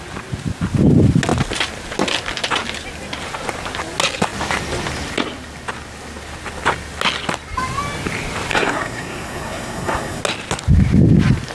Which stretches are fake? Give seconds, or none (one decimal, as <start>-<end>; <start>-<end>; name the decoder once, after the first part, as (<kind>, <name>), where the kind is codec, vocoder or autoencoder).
8.5-10.2 (codec, SNAC)